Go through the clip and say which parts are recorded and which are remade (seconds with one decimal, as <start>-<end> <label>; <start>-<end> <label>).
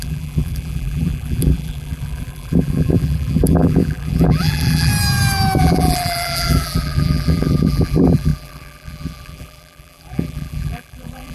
0.0-4.9 remade; 4.9-5.6 recorded; 5.6-11.3 remade